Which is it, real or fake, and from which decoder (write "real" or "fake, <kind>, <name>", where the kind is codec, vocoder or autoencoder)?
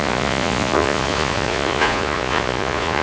fake, vocoder, Vocos